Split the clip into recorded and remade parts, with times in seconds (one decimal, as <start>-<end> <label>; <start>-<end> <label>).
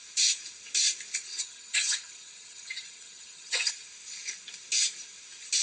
0.0-1.3 recorded; 1.3-3.7 remade; 3.7-5.6 recorded